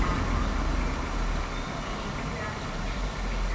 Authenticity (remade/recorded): recorded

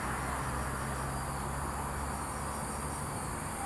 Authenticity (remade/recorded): recorded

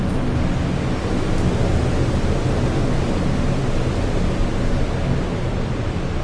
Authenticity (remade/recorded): recorded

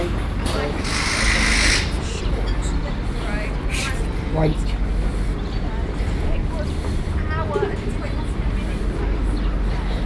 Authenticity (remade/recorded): recorded